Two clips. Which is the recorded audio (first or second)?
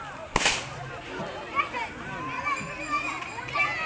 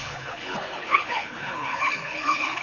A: first